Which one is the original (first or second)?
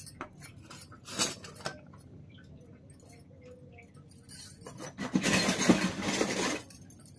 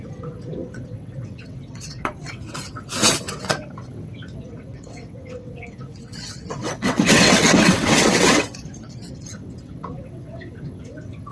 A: first